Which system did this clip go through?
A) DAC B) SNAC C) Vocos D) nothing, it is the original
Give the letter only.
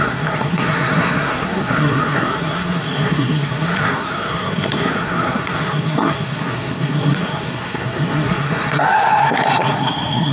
B